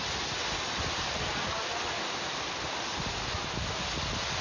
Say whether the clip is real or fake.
real